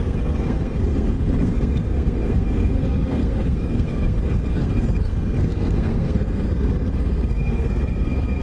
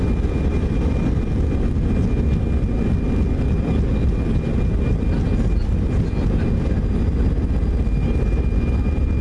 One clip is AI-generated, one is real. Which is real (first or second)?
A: second